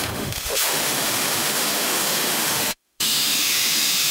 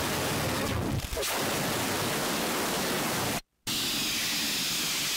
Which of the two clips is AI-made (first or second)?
first